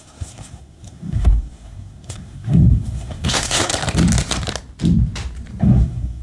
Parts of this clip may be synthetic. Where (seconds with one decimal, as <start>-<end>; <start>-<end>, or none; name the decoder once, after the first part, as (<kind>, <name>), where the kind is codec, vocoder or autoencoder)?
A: 0.0-3.7 (codec, SNAC); 5.6-6.2

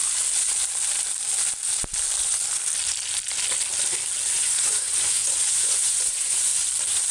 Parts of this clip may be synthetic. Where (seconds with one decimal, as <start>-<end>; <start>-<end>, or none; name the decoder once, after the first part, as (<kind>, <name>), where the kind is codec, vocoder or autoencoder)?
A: 4.3-6.5 (vocoder, Vocos)

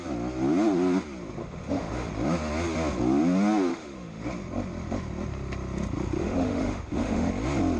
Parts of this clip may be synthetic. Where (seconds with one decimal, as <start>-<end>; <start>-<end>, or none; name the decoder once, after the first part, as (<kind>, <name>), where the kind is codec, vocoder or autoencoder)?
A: 1.4-2.1 (autoencoder, DAC-VAE); 3.7-4.2; 6.2-7.3